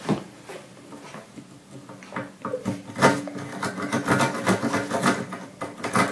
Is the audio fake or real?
real